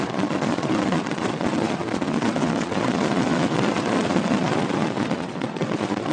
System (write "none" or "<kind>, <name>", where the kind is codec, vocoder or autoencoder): vocoder, Vocos